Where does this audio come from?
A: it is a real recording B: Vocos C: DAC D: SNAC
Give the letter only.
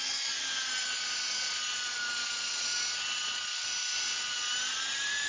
A